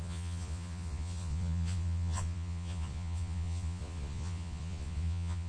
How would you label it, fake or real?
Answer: fake